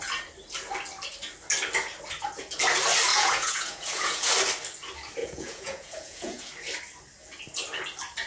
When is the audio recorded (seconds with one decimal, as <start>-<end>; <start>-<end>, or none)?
0.0-3.1; 4.3-5.2; 6.5-8.3